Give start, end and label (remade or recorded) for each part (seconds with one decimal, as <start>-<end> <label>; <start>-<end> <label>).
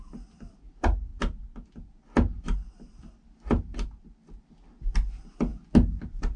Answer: 0.0-6.4 recorded